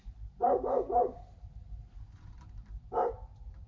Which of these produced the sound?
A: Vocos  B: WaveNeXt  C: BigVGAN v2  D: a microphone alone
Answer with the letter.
C